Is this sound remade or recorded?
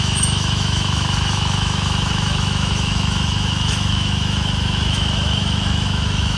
remade